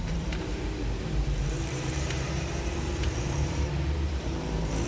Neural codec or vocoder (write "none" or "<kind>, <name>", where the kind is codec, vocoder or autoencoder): vocoder, BigVGAN v2